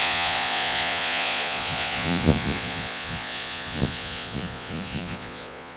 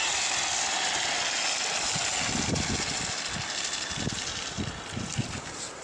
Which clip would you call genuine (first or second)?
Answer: second